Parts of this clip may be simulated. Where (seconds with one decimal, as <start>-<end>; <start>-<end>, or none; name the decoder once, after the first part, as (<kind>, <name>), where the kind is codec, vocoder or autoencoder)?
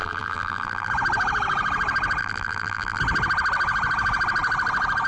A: 0.0-0.9 (vocoder, BigVGAN v2); 2.2-3.0